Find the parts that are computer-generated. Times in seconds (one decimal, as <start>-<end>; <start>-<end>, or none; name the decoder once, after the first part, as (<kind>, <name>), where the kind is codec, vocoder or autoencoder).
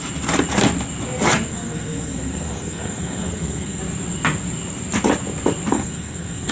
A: 1.5-3.8 (codec, SNAC); 5.7-6.5